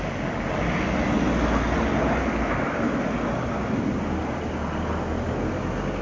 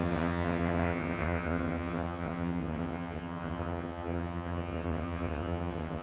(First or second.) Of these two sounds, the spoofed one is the second